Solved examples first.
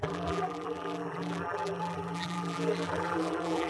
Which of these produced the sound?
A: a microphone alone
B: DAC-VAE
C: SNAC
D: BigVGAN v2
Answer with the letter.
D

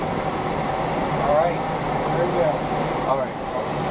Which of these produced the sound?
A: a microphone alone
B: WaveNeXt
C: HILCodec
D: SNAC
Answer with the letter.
A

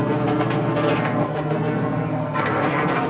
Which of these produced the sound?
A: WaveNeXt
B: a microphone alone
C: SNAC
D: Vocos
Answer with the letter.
C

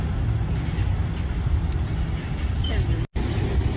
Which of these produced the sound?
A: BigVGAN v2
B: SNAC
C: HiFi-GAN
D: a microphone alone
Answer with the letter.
D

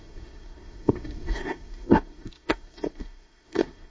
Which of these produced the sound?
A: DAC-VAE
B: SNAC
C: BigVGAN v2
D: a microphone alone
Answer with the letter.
B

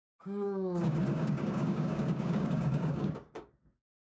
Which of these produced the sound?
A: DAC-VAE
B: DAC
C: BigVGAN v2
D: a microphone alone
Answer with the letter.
B